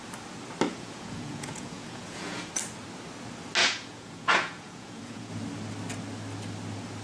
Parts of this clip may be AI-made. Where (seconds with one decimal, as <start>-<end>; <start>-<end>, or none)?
0.7-2.5; 3.6-5.3